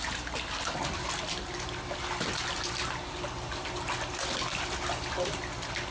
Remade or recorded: recorded